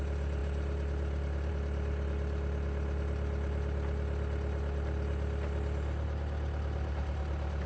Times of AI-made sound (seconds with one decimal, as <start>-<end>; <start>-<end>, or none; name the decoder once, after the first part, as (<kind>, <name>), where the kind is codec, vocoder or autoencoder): none